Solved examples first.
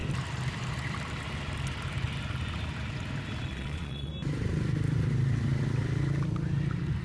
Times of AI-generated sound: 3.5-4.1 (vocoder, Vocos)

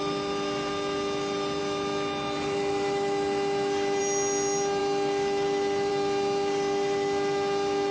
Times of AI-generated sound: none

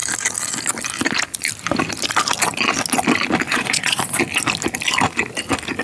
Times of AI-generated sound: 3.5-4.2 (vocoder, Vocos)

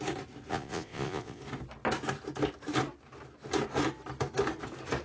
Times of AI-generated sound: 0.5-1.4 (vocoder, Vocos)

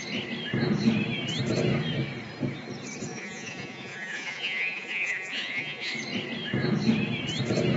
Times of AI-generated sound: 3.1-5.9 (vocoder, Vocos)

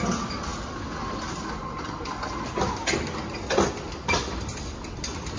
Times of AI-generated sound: none